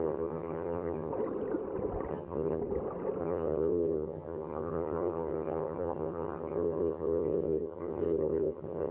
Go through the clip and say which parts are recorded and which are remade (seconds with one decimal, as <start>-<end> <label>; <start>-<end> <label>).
0.0-1.1 remade; 1.1-2.1 recorded; 2.1-2.6 remade; 2.6-3.2 recorded; 3.2-8.9 remade